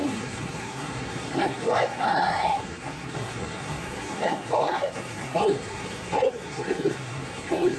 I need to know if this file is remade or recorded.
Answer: remade